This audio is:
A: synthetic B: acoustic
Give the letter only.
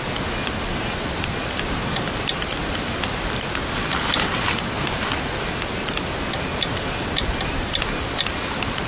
B